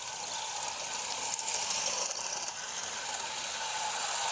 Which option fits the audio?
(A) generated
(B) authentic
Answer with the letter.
B